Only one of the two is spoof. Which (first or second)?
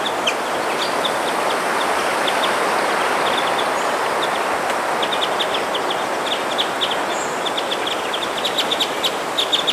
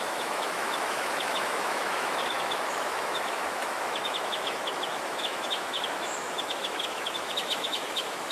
second